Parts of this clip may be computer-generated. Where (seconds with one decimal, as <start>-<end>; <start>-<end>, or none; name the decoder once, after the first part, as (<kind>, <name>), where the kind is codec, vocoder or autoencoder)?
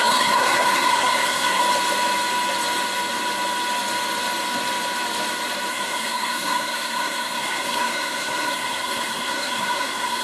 0.0-1.6 (codec, SNAC); 5.7-10.2